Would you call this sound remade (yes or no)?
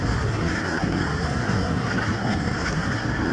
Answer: yes